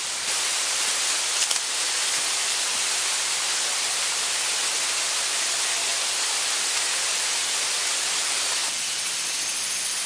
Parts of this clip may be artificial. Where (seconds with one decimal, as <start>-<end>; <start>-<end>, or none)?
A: none